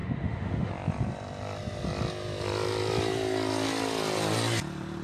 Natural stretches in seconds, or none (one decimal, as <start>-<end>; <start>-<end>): 0.7-5.0